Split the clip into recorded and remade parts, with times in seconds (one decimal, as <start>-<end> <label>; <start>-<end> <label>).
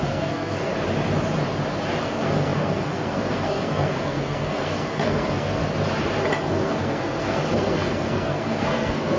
0.0-0.7 remade; 0.7-2.0 recorded; 2.0-5.6 remade; 5.6-6.5 recorded; 6.5-9.2 remade